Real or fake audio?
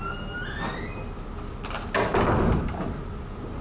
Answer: real